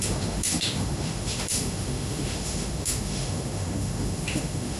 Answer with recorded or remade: remade